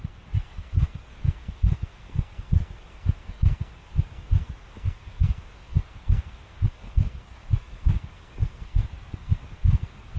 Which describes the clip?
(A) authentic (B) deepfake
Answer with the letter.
B